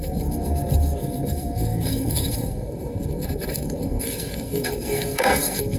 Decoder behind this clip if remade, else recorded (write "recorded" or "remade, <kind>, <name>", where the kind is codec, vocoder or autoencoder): remade, codec, SNAC